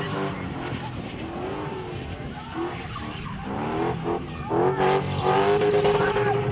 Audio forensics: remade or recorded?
recorded